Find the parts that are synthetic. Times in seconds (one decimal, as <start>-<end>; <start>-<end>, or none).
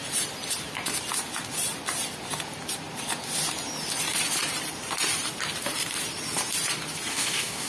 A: 7.1-7.7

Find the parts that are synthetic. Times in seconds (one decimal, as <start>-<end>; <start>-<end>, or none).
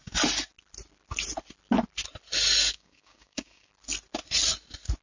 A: 2.6-3.7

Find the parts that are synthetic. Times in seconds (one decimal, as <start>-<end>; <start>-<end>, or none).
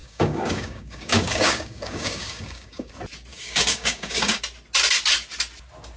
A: 0.0-2.9; 3.3-4.4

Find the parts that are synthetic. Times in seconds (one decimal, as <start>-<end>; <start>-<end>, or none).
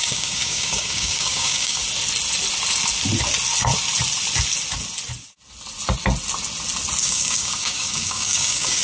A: 0.0-1.8; 7.0-8.8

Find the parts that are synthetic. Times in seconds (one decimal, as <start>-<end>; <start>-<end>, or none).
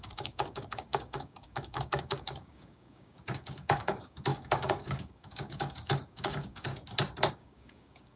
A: 0.0-6.7; 7.3-8.2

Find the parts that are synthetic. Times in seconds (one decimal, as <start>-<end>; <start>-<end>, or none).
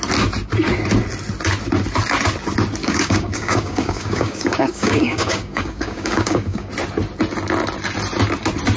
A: 2.8-6.7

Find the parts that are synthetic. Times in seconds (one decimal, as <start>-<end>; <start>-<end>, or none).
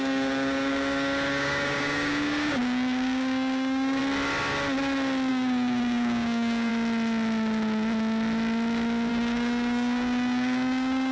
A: 0.0-4.0; 5.3-6.7; 9.1-11.1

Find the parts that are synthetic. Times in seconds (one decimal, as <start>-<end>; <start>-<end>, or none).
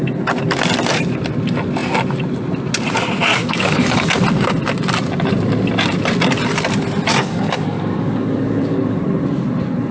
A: 3.3-4.1; 7.1-9.0